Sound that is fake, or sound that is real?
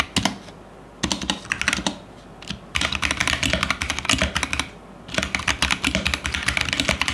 real